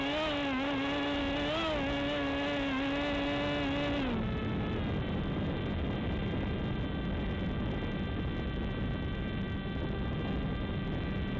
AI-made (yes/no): no